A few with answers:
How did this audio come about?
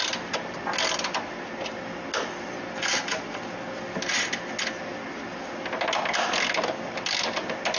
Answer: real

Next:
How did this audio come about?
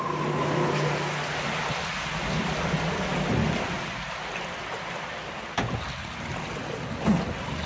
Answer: real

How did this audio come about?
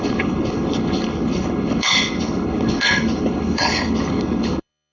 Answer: fake